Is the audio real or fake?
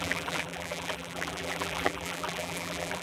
fake